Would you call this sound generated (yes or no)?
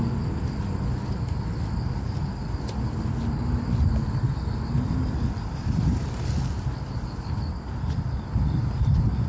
no